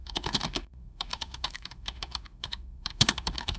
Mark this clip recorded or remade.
remade